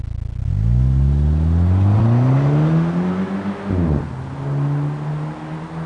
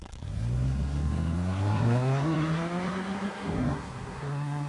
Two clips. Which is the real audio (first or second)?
first